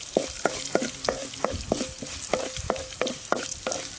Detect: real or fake real